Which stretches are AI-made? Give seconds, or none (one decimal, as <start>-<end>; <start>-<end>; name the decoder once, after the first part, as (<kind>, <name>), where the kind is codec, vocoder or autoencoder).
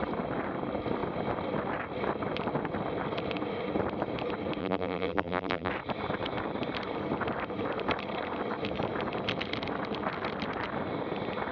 4.6-5.7 (vocoder, BigVGAN v2)